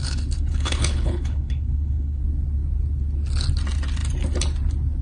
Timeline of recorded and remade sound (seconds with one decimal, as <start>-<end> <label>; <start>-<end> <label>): 0.0-2.2 remade; 2.2-5.0 recorded